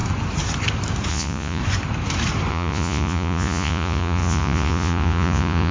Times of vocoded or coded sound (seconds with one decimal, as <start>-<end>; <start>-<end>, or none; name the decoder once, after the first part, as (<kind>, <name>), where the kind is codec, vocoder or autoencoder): 1.1-1.6 (vocoder, Vocos); 2.5-5.7